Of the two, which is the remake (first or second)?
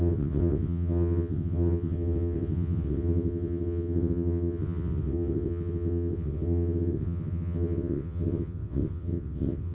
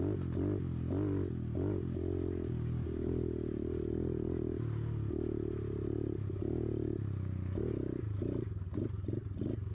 first